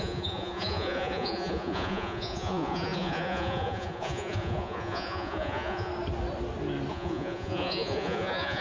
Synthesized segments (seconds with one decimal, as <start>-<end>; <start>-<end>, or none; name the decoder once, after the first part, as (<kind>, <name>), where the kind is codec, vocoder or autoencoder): 0.0-5.9 (vocoder, Vocos); 6.9-8.6